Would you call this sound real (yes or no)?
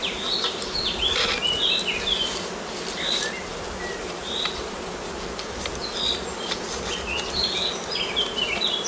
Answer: yes